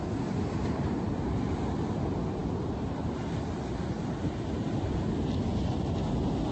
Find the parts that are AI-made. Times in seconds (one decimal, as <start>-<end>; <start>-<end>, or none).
none